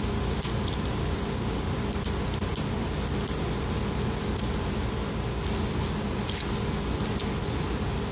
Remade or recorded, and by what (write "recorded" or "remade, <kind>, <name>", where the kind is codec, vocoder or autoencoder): recorded